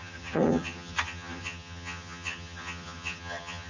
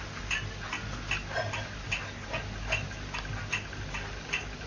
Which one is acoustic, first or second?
second